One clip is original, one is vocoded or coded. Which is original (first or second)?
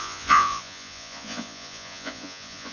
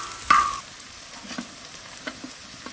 second